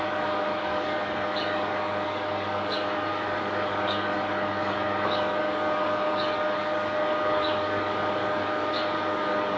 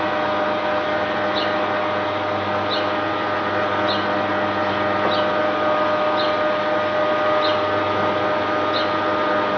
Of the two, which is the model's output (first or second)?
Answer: first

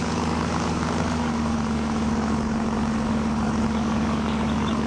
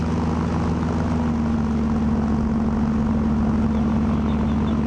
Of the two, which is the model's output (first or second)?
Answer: first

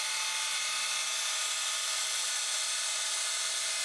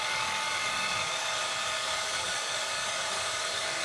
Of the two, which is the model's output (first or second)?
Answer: second